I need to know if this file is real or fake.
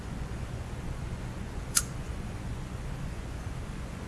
fake